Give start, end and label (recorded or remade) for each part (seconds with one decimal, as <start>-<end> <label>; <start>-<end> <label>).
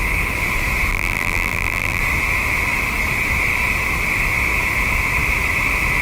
0.0-0.9 recorded; 0.9-2.0 remade; 2.0-6.0 recorded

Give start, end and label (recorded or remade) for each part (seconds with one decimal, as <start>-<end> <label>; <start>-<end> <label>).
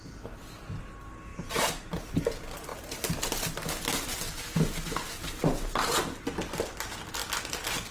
0.0-1.3 recorded; 1.3-2.2 remade; 2.2-5.4 recorded; 5.4-6.2 remade; 6.2-7.9 recorded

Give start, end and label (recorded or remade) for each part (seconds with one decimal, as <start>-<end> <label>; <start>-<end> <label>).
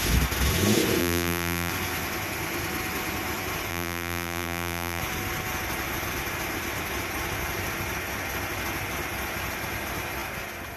0.0-1.0 recorded; 1.0-1.7 remade; 1.7-3.7 recorded; 3.7-5.0 remade; 5.0-10.8 recorded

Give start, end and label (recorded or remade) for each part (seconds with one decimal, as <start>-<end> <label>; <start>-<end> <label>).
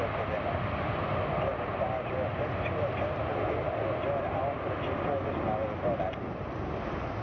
0.0-1.5 recorded; 1.5-2.1 remade; 2.1-7.2 recorded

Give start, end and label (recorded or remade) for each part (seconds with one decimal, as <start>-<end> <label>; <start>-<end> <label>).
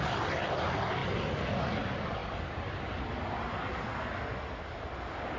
0.0-1.0 recorded; 1.0-1.8 remade; 1.8-2.2 recorded; 2.2-3.1 remade; 3.1-5.4 recorded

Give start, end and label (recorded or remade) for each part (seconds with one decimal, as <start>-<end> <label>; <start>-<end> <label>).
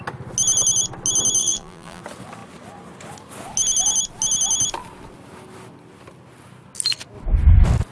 0.0-1.4 recorded; 1.4-2.0 remade; 2.0-7.9 recorded